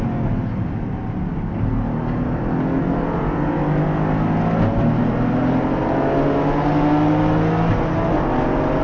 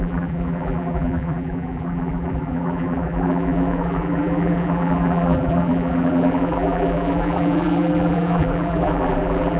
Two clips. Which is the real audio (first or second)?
first